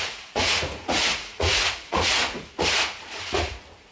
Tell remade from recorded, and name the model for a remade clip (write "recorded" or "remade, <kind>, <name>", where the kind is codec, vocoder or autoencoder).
remade, vocoder, Vocos